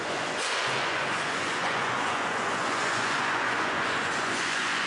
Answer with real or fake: fake